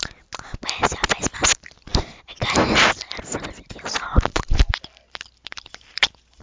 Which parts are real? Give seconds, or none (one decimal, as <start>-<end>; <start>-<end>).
0.0-6.4